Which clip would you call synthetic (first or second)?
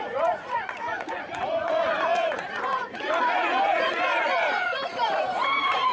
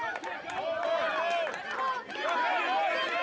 first